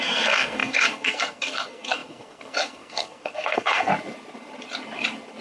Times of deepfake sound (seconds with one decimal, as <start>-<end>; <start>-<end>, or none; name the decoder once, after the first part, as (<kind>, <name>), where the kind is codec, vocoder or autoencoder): 0.0-3.9 (codec, SNAC)

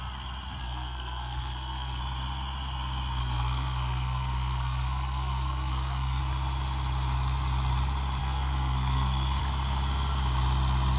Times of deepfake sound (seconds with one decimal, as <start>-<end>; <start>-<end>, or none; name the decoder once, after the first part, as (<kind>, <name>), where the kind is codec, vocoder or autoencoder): 0.6-2.0 (codec, SNAC); 3.2-6.2; 8.2-9.4

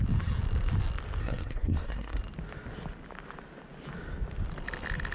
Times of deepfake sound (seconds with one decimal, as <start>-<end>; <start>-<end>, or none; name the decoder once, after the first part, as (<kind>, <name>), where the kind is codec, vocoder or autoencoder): 1.2-2.2 (codec, SNAC)